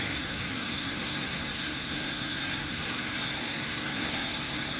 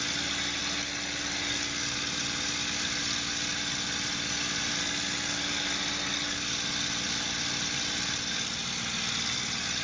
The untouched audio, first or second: second